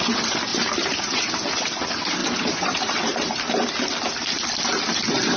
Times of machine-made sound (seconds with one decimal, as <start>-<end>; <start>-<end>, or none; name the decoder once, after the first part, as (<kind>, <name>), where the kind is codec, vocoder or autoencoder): 0.5-1.3 (vocoder, BigVGAN v2); 2.2-3.4

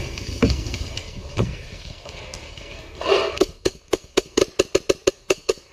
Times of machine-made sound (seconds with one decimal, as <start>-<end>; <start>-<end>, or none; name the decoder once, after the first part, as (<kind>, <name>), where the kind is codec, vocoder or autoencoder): 0.0-4.4 (codec, SNAC); 5.1-5.7

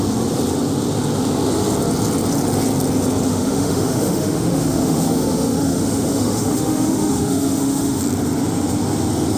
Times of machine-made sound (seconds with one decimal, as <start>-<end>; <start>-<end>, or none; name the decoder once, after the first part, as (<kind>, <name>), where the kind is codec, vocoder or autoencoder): 3.3-8.0 (autoencoder, DAC-VAE)

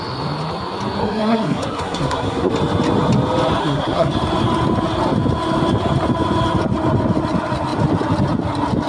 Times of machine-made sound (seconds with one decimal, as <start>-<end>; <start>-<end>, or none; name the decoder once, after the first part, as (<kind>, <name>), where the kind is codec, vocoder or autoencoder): 1.0-2.5 (codec, SNAC); 3.6-4.1